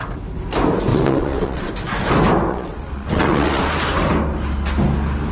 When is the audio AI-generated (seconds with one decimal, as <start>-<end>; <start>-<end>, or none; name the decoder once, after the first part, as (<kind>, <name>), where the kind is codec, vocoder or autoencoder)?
0.9-1.7 (vocoder, WaveNeXt); 2.5-3.6

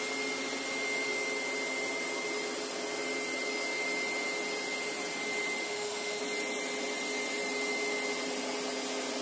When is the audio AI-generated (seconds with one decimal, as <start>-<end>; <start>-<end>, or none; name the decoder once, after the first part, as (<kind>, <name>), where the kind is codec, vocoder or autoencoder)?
5.6-6.2 (autoencoder, DAC-VAE)

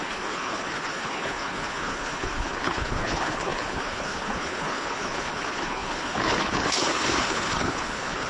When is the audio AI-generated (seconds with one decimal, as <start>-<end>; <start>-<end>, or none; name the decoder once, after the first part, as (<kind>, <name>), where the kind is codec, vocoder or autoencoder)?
0.0-8.3 (codec, HILCodec)